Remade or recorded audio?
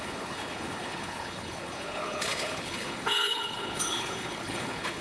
remade